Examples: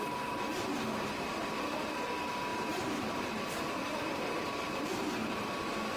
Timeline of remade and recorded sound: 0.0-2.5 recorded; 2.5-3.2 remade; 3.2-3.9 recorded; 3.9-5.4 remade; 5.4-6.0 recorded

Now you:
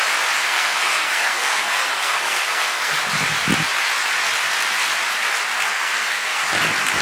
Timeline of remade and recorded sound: 0.0-0.4 recorded; 0.4-3.0 remade; 3.0-5.7 recorded; 5.7-6.4 remade; 6.4-7.0 recorded

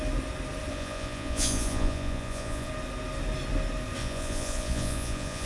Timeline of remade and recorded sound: 0.0-0.7 recorded; 0.7-2.7 remade; 2.7-4.0 recorded; 4.0-5.5 remade

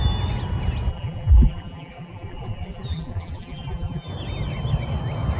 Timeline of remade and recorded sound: 0.0-0.9 recorded; 0.9-4.1 remade; 4.1-5.4 recorded

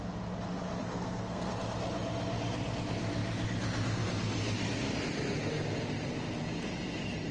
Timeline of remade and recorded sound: 0.0-0.9 recorded; 0.9-1.5 remade; 1.5-7.3 recorded